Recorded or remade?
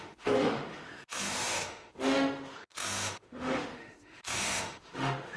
remade